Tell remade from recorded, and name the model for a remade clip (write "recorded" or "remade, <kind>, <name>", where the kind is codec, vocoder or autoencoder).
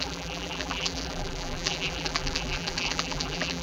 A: remade, vocoder, BigVGAN v2